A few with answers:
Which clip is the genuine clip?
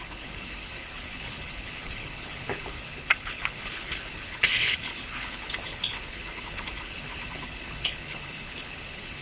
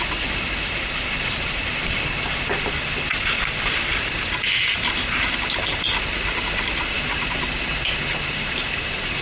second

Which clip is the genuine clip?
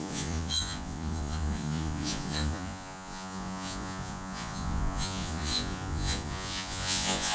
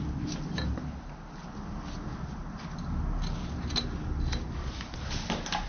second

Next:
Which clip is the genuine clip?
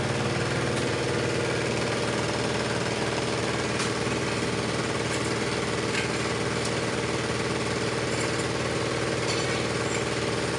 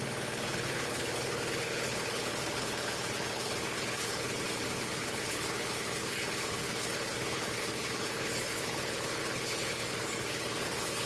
first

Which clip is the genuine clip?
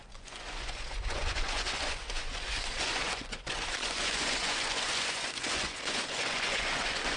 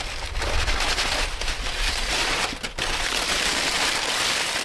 second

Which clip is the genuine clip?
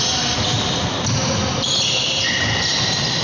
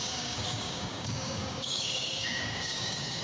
first